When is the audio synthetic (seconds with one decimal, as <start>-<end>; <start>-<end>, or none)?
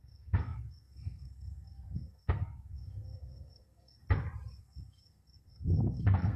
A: 0.0-4.0; 4.6-6.4